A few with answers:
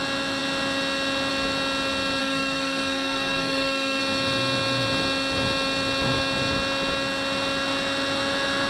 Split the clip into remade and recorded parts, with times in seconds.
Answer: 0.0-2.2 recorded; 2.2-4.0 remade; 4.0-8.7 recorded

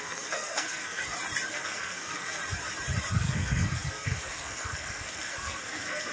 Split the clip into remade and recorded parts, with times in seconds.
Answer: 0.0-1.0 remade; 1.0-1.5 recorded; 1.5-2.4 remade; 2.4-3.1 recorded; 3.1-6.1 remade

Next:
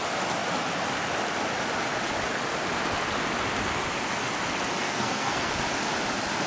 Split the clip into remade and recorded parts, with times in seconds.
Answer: 0.0-4.8 recorded; 4.8-5.5 remade; 5.5-6.5 recorded